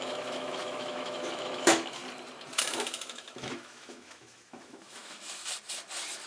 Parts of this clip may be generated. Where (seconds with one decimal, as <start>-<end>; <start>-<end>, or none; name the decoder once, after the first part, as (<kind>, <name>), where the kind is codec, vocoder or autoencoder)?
0.0-2.0 (autoencoder, DAC-VAE); 2.6-5.4